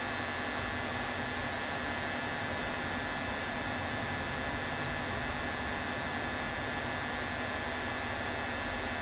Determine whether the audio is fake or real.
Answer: real